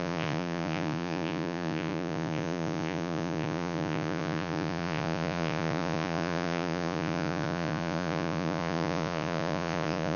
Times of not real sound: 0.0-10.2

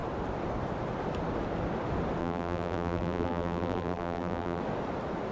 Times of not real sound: 2.2-4.6

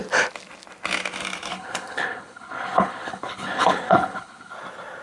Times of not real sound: 1.5-4.5

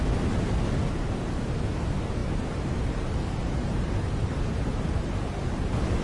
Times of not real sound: 2.2-6.0